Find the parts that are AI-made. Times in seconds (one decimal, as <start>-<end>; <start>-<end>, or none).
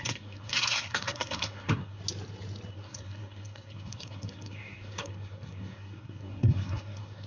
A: 0.0-2.0; 2.7-7.3